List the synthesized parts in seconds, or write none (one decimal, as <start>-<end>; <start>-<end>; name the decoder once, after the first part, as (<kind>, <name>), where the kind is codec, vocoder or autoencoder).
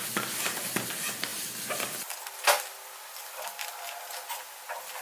none